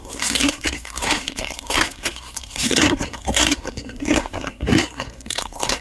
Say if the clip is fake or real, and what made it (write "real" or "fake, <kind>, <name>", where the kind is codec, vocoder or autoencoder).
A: fake, codec, SNAC